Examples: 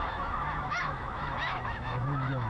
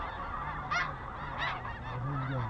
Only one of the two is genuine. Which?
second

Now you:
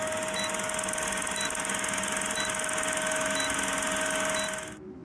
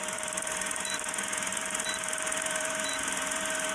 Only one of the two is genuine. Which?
first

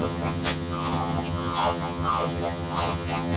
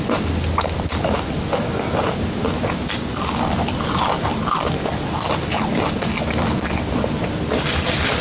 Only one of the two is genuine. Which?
second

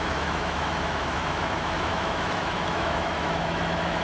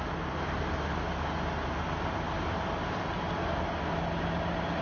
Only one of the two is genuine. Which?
second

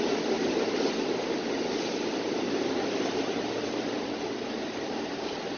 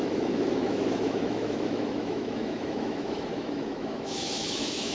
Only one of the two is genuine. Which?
first